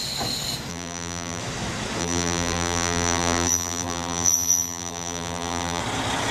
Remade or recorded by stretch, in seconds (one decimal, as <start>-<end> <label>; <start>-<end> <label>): 0.0-0.7 recorded; 0.7-1.4 remade; 1.4-2.0 recorded; 2.0-5.8 remade; 5.8-6.3 recorded